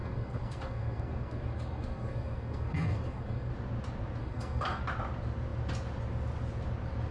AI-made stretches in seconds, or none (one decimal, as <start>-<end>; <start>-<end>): 0.0-3.5; 4.2-4.8